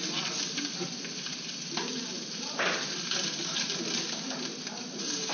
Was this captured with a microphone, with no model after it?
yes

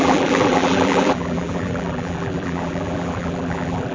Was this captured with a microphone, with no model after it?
no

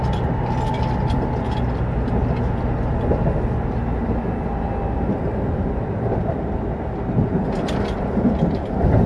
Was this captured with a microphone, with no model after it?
yes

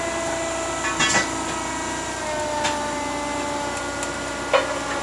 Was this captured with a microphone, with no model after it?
yes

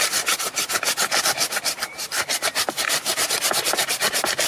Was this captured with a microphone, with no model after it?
yes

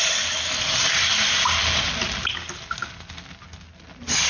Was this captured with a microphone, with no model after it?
yes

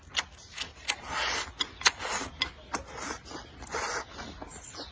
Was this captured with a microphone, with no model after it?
yes